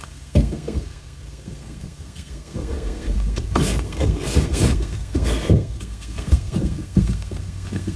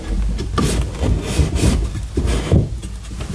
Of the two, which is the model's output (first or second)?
first